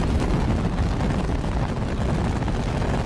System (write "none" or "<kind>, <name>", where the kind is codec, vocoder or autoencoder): none